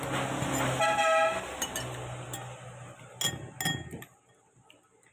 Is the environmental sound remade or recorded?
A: recorded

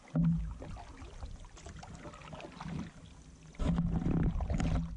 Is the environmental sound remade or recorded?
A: recorded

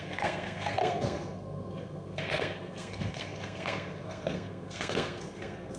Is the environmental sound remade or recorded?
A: remade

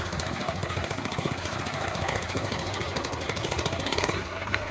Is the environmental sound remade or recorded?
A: remade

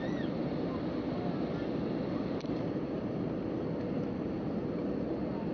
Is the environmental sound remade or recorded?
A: recorded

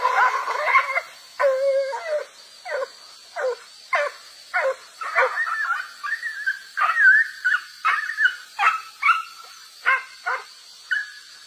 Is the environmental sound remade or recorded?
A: recorded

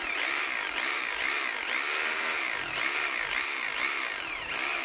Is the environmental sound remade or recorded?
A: recorded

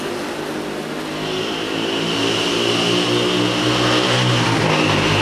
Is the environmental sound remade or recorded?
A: recorded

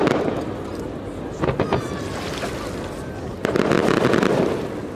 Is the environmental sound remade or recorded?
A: recorded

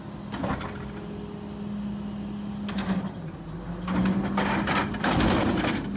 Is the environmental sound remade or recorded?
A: recorded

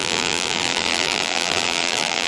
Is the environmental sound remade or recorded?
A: remade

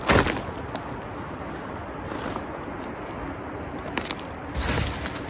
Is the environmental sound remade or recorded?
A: recorded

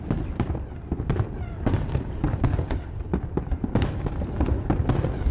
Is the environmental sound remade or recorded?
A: remade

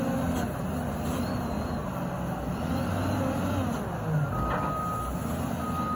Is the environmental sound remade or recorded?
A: recorded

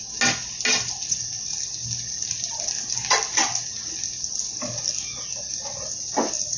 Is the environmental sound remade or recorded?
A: recorded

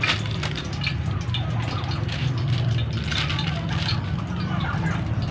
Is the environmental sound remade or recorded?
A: recorded